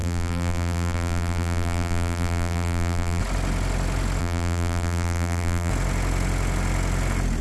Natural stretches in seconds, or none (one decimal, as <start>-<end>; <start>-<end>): 3.2-4.2; 5.7-7.4

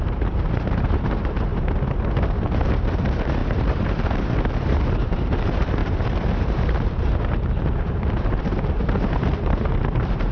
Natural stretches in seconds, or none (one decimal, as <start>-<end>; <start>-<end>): 1.5-2.5